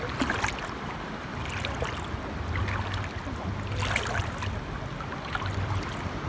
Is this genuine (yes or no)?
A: yes